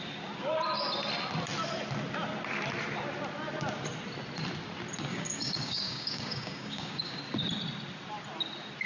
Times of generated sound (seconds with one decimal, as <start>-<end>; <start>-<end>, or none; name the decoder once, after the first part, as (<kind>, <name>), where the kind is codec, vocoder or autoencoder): 5.1-7.2 (codec, DAC)